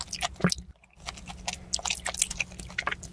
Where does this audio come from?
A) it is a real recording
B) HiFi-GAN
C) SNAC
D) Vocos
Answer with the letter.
A